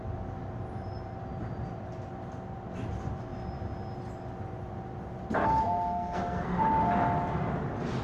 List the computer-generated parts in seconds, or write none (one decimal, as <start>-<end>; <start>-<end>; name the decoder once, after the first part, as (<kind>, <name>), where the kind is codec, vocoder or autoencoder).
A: 5.4-6.6 (codec, SNAC)